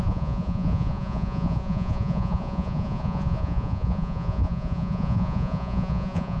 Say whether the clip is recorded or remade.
remade